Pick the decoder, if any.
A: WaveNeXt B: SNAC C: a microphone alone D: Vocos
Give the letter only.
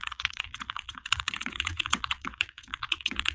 A